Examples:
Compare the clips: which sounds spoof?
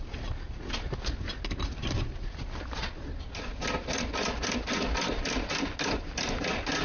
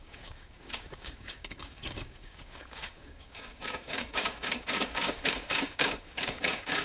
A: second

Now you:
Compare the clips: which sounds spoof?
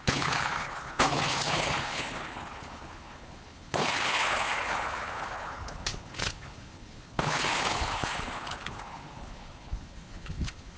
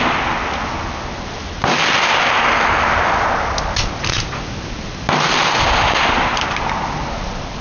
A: first